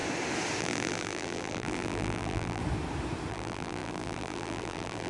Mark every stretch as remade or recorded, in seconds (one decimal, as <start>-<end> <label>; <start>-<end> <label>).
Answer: 0.0-0.6 recorded; 0.6-2.6 remade; 2.6-3.3 recorded; 3.3-5.1 remade